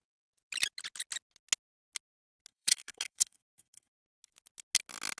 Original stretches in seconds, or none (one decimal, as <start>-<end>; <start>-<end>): 0.0-2.5; 4.0-5.2